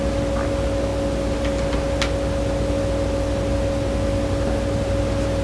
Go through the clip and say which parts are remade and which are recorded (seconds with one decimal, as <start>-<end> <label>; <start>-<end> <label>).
0.0-5.4 recorded